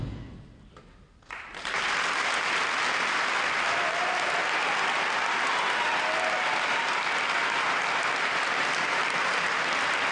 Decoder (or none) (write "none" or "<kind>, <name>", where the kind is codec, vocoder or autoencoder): none